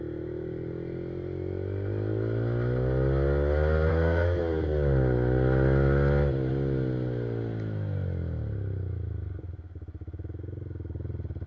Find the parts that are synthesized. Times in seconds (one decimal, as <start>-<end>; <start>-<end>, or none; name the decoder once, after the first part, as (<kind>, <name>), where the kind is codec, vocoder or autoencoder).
3.9-4.4 (codec, SNAC)